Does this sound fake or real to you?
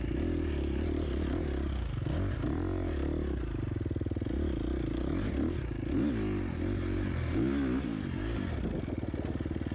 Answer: real